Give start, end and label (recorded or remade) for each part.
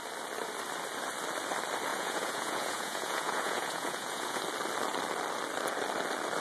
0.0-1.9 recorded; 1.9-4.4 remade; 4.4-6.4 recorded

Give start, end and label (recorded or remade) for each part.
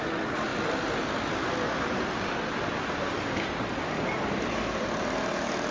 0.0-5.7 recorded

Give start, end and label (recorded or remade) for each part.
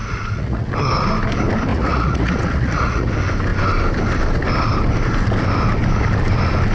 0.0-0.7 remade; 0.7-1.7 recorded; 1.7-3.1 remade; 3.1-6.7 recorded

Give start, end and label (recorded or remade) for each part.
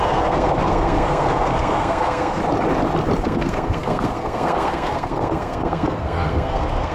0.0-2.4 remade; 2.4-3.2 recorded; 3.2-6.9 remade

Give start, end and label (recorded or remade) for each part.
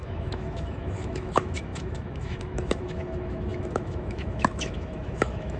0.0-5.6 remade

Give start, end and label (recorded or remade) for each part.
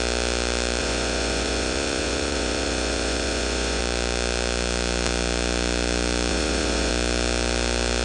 0.0-0.8 recorded; 0.8-3.8 remade; 3.8-6.3 recorded; 6.3-6.9 remade; 6.9-8.0 recorded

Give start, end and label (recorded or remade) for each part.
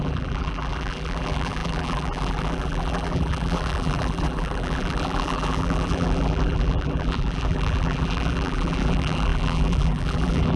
0.0-10.6 remade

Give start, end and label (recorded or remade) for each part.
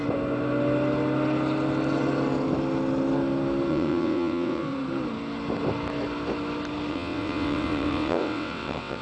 0.0-3.7 recorded; 3.7-4.7 remade; 4.7-6.9 recorded; 6.9-9.0 remade